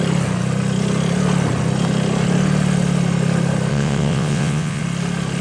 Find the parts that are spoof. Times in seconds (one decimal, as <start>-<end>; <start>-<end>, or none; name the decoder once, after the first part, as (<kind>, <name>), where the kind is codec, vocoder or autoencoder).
3.7-4.8 (vocoder, WaveNeXt)